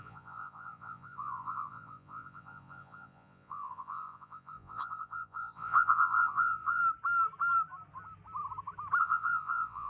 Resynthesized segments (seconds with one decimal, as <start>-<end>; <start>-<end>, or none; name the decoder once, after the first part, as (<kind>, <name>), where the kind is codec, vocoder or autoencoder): 0.0-6.8 (vocoder, Vocos); 9.0-9.9